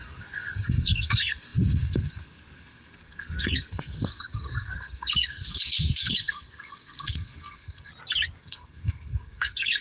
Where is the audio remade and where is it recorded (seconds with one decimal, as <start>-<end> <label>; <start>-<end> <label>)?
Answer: 0.0-7.9 remade; 7.9-8.4 recorded; 8.4-9.8 remade

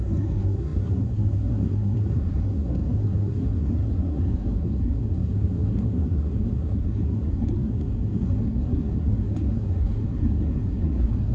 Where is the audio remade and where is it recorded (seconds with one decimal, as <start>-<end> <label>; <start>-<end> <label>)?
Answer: 0.0-11.3 remade

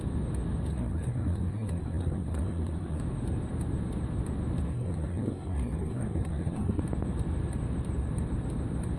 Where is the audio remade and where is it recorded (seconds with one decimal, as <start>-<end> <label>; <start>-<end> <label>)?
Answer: 0.0-0.7 recorded; 0.7-3.0 remade; 3.0-4.7 recorded; 4.7-6.8 remade; 6.8-9.0 recorded

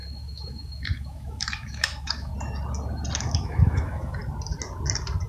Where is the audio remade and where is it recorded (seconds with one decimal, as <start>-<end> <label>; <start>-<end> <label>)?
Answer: 0.0-2.3 remade; 2.3-3.2 recorded; 3.2-4.2 remade; 4.2-5.3 recorded

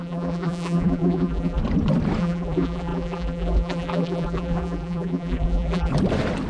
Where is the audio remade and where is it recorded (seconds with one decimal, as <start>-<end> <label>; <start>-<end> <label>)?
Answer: 0.0-1.6 remade; 1.6-2.2 recorded; 2.2-5.9 remade; 5.9-6.5 recorded